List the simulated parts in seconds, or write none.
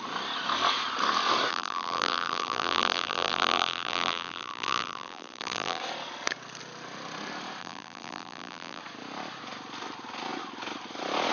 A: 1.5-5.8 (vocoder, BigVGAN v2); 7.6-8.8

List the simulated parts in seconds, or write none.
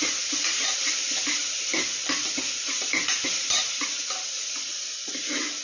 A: none